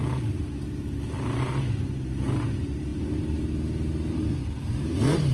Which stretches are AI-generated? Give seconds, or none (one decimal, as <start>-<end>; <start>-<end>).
none